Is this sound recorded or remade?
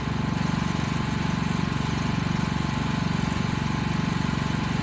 remade